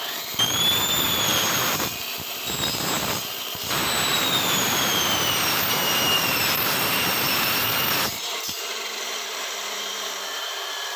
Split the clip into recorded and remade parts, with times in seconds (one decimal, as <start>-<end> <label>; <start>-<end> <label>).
0.0-11.0 remade